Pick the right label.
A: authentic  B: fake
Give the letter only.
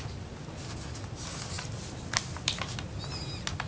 A